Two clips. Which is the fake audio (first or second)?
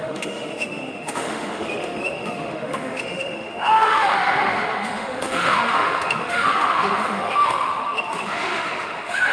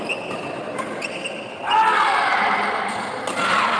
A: first